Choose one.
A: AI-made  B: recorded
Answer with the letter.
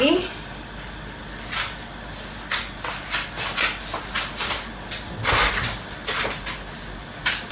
B